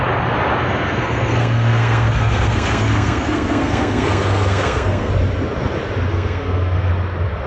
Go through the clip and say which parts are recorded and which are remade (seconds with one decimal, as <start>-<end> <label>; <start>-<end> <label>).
0.0-0.6 recorded; 0.6-5.1 remade; 5.1-6.1 recorded; 6.1-6.9 remade; 6.9-7.5 recorded

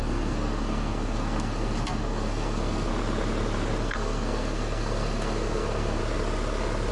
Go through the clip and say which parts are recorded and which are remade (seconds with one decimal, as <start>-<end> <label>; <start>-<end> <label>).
0.0-2.9 remade; 2.9-3.8 recorded; 3.8-6.0 remade; 6.0-6.9 recorded

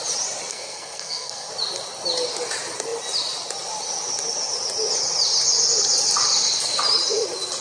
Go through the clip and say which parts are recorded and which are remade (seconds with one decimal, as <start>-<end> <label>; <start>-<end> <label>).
0.0-0.5 recorded; 0.5-1.5 remade; 1.5-7.6 recorded

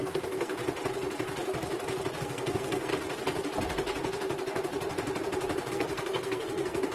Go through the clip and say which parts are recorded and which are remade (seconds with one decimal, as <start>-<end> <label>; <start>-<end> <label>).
0.0-0.6 remade; 0.6-2.2 recorded; 2.2-2.9 remade; 2.9-5.7 recorded; 5.7-6.9 remade

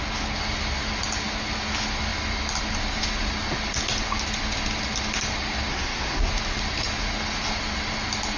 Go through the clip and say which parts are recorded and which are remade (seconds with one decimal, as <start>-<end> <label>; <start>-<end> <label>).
0.0-5.7 recorded; 5.7-6.3 remade; 6.3-8.4 recorded

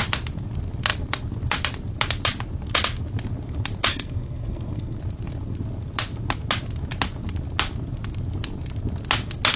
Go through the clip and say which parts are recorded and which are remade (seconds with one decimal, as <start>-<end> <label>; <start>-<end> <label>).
0.0-3.9 recorded; 3.9-5.0 remade; 5.0-9.6 recorded

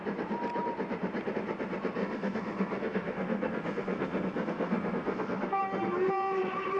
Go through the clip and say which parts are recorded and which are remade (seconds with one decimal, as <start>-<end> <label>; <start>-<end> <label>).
0.0-2.0 recorded; 2.0-5.6 remade; 5.6-6.8 recorded

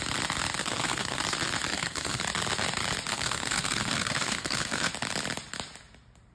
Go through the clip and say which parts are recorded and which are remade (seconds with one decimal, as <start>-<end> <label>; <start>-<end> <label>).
0.0-0.6 recorded; 0.6-1.2 remade; 1.2-1.7 recorded; 1.7-2.2 remade; 2.2-3.1 recorded; 3.1-4.9 remade; 4.9-6.3 recorded